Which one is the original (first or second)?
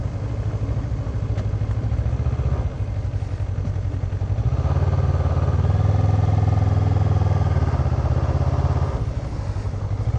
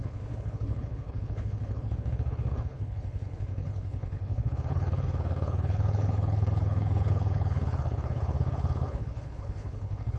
first